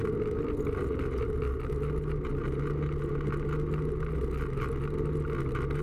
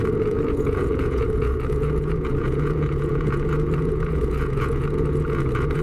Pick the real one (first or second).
first